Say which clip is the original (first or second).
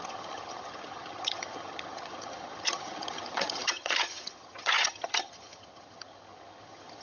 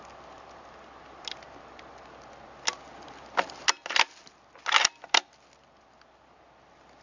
second